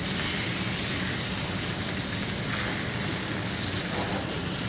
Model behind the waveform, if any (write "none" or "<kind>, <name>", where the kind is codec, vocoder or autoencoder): none